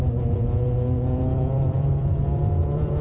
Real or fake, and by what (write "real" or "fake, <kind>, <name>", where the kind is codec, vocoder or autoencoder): fake, vocoder, Vocos